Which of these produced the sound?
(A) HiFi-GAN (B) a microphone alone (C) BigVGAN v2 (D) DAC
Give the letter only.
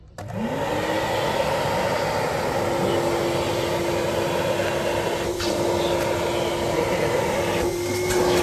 B